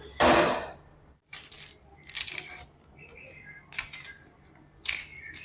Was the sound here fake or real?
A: real